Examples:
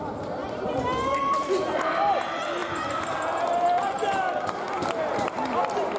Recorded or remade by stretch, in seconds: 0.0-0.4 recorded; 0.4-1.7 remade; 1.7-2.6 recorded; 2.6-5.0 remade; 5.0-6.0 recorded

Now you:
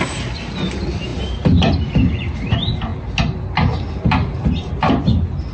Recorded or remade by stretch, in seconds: 0.0-5.5 recorded

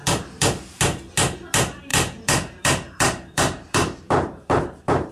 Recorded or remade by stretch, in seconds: 0.0-1.9 recorded; 1.9-5.1 remade

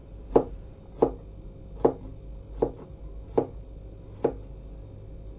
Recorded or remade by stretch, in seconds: 0.0-0.8 remade; 0.8-5.4 recorded

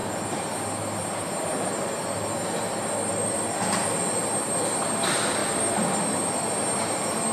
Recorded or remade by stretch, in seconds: 0.0-5.4 recorded; 5.4-6.4 remade; 6.4-7.3 recorded